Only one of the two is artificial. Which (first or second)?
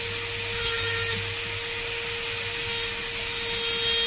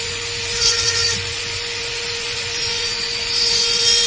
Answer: second